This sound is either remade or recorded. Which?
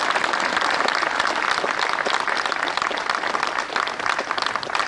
recorded